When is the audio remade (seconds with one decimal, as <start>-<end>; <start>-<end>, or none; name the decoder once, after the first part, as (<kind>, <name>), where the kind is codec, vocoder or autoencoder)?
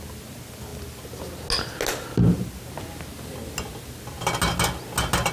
none